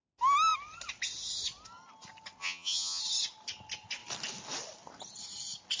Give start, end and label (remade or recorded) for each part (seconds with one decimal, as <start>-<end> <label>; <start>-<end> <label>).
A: 0.0-2.4 recorded; 2.4-3.0 remade; 3.0-5.8 recorded